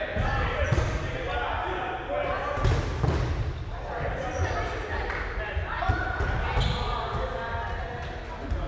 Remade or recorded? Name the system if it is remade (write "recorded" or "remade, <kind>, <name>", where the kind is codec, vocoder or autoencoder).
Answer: recorded